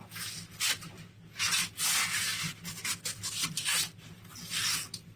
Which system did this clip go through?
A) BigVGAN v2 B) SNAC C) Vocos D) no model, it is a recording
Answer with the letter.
D